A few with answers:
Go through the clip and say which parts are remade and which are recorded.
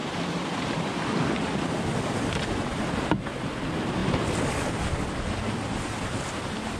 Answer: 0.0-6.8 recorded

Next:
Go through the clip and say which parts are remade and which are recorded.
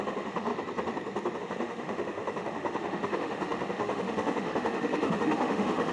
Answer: 0.0-0.5 remade; 0.5-1.4 recorded; 1.4-5.9 remade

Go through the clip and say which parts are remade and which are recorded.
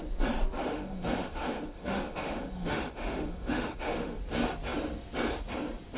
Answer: 0.0-0.6 recorded; 0.6-4.2 remade; 4.2-6.0 recorded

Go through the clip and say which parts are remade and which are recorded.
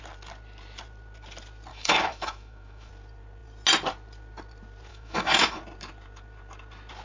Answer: 0.0-1.7 recorded; 1.7-2.9 remade; 2.9-4.9 recorded; 4.9-5.6 remade; 5.6-7.0 recorded